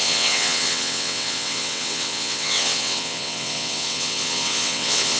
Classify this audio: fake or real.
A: fake